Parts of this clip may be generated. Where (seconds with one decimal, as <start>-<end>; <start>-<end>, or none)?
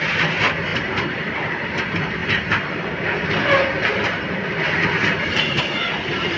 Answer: 0.7-1.8